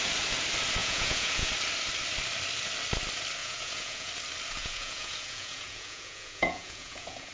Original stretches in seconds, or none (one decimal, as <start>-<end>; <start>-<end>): 0.0-0.8; 1.5-3.4; 4.1-4.6